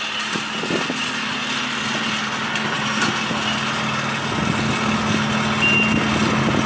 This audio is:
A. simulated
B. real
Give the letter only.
B